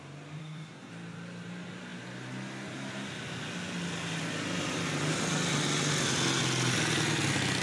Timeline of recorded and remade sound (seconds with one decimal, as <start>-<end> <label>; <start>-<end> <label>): 0.0-0.4 recorded; 0.4-0.9 remade; 0.9-7.6 recorded